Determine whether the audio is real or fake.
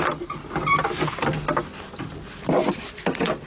real